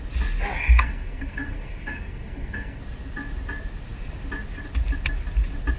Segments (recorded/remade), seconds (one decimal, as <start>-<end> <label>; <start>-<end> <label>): 0.0-0.6 recorded; 0.6-2.8 remade; 2.8-5.8 recorded